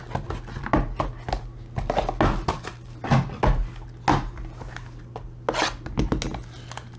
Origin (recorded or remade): recorded